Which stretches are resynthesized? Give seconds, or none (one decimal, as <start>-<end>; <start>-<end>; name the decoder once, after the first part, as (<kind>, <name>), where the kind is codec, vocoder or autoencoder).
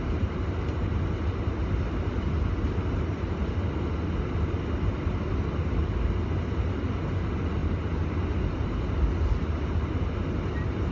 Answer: none